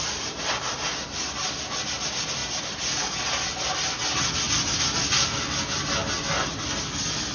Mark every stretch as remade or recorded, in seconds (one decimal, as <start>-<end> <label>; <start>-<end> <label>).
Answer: 0.0-7.3 recorded